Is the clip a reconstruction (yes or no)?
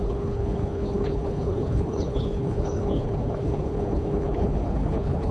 yes